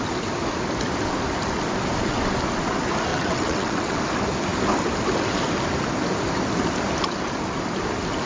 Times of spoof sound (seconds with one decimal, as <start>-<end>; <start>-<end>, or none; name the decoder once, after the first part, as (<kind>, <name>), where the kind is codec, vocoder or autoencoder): 3.1-4.0 (vocoder, WaveNeXt)